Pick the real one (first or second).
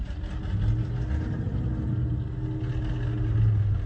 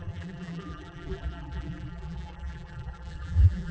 first